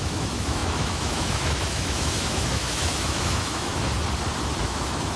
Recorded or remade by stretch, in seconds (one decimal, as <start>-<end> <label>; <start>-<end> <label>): 0.0-3.7 remade; 3.7-4.6 recorded; 4.6-5.2 remade

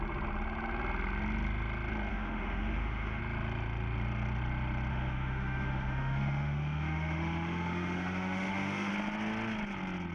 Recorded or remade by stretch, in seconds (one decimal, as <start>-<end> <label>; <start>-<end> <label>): 0.0-2.1 recorded; 2.1-3.2 remade; 3.2-4.9 recorded; 4.9-8.9 remade; 8.9-10.1 recorded

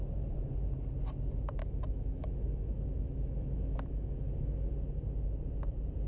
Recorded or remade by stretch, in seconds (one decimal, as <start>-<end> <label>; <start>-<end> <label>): 0.0-1.6 recorded; 1.6-4.7 remade; 4.7-6.1 recorded

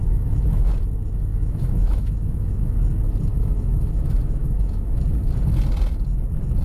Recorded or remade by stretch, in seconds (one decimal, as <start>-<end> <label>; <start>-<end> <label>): 0.0-0.7 remade; 0.7-1.3 recorded; 1.3-2.7 remade; 2.7-3.3 recorded; 3.3-5.0 remade; 5.0-6.6 recorded

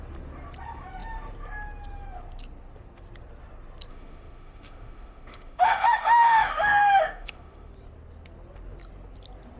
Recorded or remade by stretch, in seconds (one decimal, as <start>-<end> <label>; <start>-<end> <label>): 0.0-3.9 recorded; 3.9-7.7 remade; 7.7-9.6 recorded